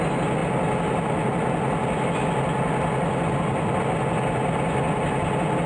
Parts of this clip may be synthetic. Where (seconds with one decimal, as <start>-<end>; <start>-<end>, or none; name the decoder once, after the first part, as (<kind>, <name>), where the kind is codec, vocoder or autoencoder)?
none

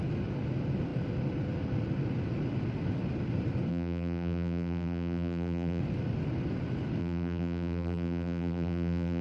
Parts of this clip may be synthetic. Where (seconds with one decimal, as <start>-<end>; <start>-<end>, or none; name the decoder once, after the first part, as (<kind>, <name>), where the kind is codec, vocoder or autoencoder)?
3.7-5.8 (vocoder, BigVGAN v2); 7.0-9.2

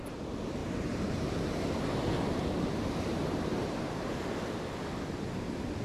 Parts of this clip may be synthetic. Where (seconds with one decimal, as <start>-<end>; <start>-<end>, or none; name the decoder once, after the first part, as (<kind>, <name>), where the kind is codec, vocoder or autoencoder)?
0.6-1.8 (vocoder, BigVGAN v2); 3.1-4.1

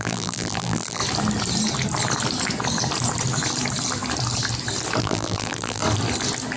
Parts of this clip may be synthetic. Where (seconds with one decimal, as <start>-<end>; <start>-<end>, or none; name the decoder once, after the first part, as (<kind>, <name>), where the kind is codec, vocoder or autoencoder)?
0.0-1.0 (vocoder, BigVGAN v2); 5.0-5.8

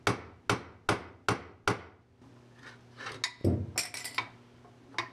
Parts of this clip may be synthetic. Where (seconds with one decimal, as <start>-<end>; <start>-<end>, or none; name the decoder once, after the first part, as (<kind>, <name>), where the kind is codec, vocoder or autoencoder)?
none

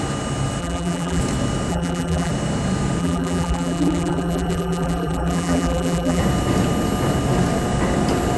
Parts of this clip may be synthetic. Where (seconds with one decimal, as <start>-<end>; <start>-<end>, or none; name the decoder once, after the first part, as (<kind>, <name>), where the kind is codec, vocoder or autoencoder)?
0.6-1.2 (vocoder, BigVGAN v2); 1.7-2.3; 3.0-6.2

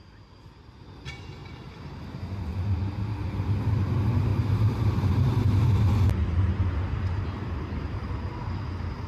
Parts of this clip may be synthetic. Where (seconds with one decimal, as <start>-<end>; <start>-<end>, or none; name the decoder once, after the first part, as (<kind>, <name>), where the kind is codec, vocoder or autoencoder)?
4.3-5.7 (vocoder, BigVGAN v2)